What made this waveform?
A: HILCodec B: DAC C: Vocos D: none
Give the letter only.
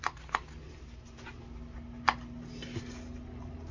D